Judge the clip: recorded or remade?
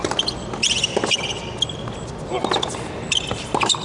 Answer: recorded